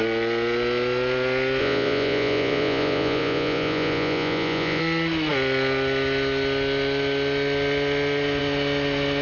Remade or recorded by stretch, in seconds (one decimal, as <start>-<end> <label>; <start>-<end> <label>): 0.0-1.6 recorded; 1.6-4.8 remade; 4.8-9.2 recorded